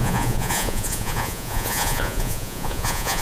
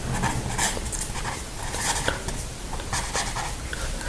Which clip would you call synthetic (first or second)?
first